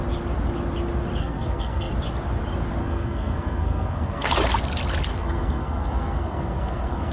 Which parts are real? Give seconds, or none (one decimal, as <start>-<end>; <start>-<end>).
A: 0.0-1.2; 1.9-2.8; 4.3-5.1